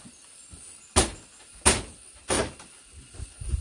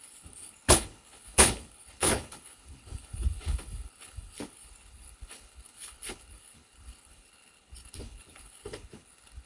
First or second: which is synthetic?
second